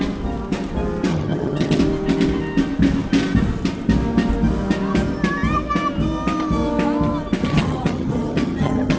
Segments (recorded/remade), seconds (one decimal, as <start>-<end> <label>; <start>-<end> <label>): 0.0-1.1 recorded; 1.1-1.8 remade; 1.8-7.4 recorded; 7.4-9.0 remade